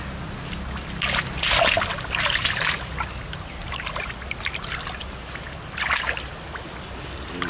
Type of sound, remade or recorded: recorded